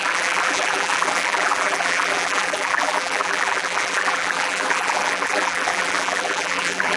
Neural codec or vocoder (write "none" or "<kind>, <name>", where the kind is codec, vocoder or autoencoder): vocoder, BigVGAN v2